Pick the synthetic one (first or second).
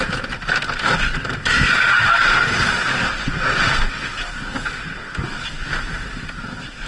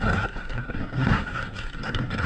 second